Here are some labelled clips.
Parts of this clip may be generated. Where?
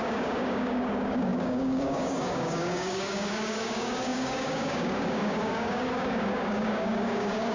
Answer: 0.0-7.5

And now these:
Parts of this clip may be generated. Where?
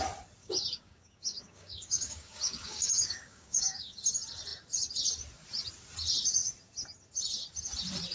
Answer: 0.4-4.0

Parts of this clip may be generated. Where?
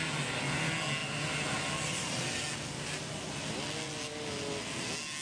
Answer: none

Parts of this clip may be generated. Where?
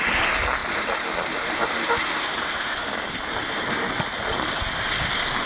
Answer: none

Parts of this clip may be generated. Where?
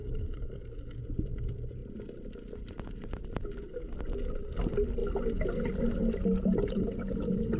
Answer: 0.0-1.0